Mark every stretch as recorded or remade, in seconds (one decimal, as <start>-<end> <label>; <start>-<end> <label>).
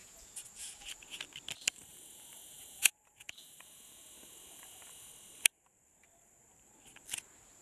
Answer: 0.0-1.2 remade; 1.2-1.9 recorded; 1.9-5.1 remade; 5.1-7.6 recorded